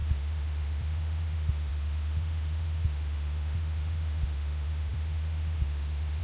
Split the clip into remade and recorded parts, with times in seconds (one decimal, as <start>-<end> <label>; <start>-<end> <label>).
0.0-6.2 remade